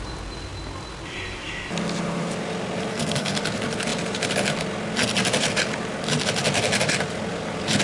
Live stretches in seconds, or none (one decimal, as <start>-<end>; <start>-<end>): 0.0-2.9; 3.4-7.8